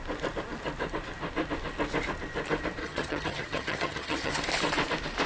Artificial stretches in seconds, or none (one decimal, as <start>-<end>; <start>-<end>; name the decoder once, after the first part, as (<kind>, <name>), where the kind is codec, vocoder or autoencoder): 2.8-4.4 (vocoder, HiFi-GAN)